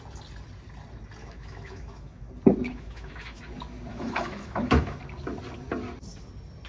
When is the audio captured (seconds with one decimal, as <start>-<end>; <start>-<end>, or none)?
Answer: 0.0-1.2; 2.3-2.7; 3.4-3.9; 5.0-6.7

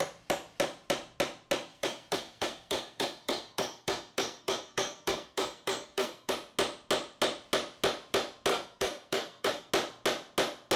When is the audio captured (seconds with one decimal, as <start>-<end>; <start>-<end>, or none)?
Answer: 0.0-1.7; 6.3-8.5; 9.7-10.8

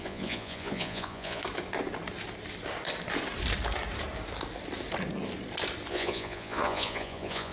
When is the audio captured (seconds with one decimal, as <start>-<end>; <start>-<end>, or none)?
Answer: 1.4-5.9

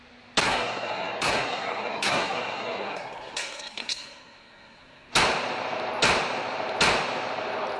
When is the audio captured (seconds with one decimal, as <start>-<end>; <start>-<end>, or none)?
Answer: 0.0-0.4; 5.1-7.8

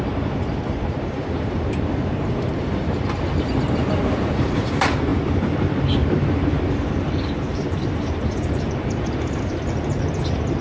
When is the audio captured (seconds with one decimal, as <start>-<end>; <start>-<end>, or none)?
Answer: none

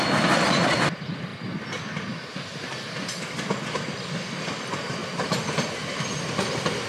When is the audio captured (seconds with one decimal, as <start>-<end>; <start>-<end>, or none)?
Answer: 0.0-6.9

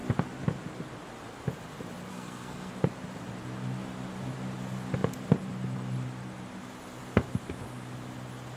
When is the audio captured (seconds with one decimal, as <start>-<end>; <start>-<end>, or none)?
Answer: 0.0-2.1; 2.7-8.6

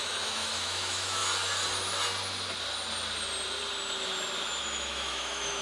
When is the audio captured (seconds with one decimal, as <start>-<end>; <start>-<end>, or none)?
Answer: 1.2-4.6